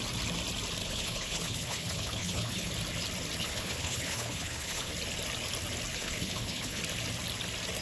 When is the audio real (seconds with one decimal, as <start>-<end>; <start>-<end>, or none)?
0.0-0.8; 2.7-3.4; 4.9-5.9; 6.8-7.8